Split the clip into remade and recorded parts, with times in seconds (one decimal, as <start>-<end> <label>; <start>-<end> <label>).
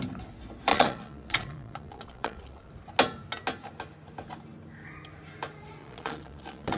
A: 0.0-0.7 recorded; 0.7-2.7 remade; 2.7-5.8 recorded; 5.8-6.8 remade